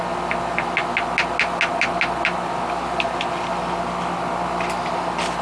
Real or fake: real